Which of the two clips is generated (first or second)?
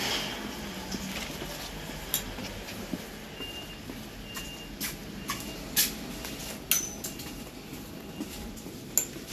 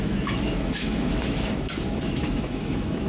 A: second